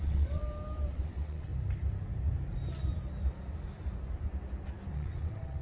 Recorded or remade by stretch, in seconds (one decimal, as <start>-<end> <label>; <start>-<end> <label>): 0.0-0.4 remade; 0.4-1.0 recorded; 1.0-1.5 remade; 1.5-4.9 recorded; 4.9-5.6 remade